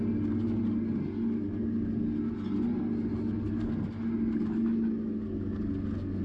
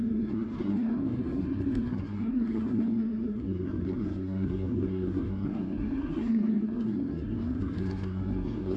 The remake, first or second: second